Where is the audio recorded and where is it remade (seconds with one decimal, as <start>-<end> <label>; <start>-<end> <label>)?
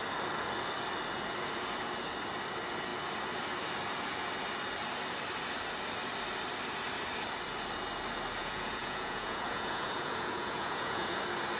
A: 0.0-8.4 recorded; 8.4-11.2 remade; 11.2-11.6 recorded